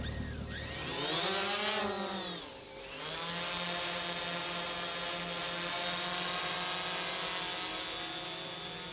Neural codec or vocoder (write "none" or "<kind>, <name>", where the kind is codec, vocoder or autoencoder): none